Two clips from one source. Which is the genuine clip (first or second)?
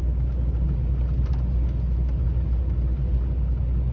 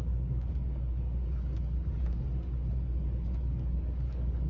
first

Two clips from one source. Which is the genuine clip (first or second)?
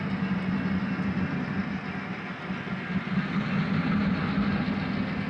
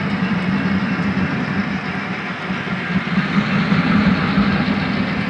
first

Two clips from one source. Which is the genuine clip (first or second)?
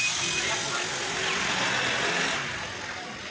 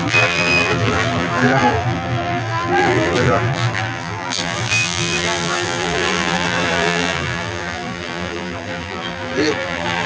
first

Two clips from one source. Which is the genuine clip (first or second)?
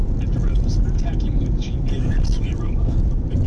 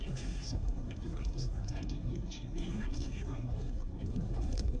first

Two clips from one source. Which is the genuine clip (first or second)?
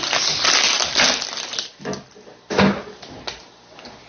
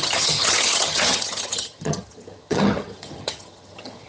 first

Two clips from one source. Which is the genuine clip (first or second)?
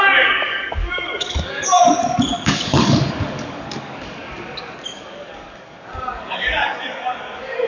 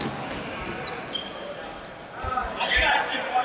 second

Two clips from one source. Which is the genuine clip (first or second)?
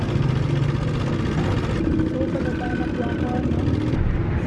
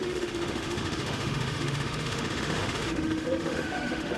first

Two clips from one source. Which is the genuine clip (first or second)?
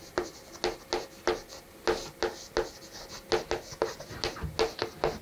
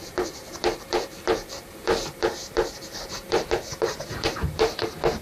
first